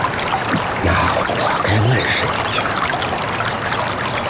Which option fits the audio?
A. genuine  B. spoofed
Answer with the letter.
A